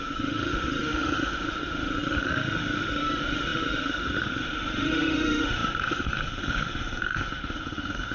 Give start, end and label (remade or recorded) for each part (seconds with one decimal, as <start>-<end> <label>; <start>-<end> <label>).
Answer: 0.0-8.1 remade